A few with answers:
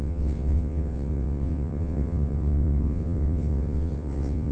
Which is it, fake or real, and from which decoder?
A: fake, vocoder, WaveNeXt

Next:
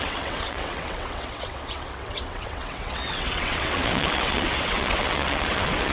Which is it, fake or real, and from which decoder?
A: fake, vocoder, WaveNeXt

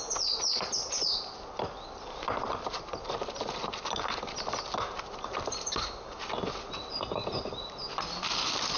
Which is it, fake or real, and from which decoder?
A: real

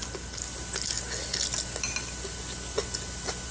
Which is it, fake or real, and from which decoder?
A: real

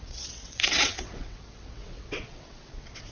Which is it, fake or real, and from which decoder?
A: fake, vocoder, WaveNeXt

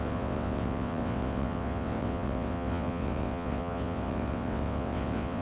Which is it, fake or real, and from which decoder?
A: fake, vocoder, WaveNeXt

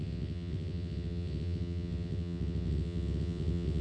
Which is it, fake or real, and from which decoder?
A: fake, vocoder, WaveNeXt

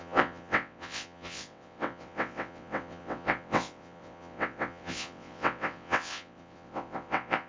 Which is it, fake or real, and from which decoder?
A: fake, vocoder, WaveNeXt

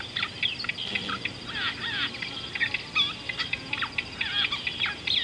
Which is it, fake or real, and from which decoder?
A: real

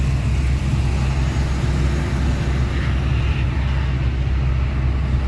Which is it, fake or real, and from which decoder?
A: real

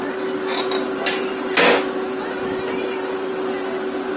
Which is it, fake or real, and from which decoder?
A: real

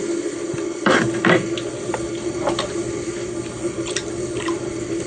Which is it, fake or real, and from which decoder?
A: real